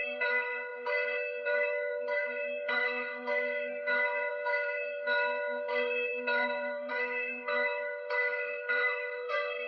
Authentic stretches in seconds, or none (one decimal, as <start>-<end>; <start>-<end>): none

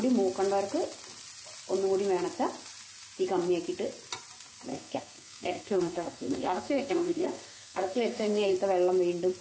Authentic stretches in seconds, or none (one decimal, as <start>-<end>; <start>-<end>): 0.0-4.7; 8.5-9.4

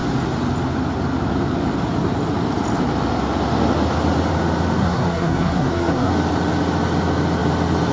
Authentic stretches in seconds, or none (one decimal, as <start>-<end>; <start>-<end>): 0.0-4.8; 6.1-7.9

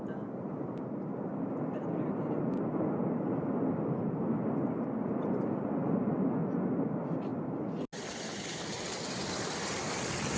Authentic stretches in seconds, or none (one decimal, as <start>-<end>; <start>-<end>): 0.0-10.4

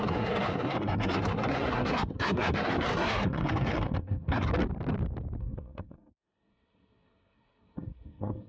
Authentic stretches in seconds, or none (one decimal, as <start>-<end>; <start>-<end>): 4.5-5.4

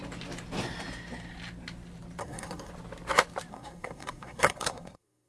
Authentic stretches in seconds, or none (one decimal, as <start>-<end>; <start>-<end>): 0.0-2.2; 2.7-3.5

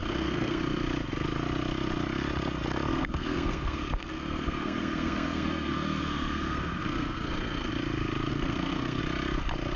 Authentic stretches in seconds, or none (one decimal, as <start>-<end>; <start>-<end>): 0.6-2.9; 7.7-8.3; 9.0-9.8

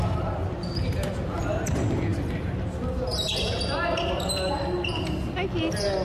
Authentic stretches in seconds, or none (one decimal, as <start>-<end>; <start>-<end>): 0.0-6.0